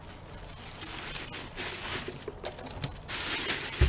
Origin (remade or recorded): recorded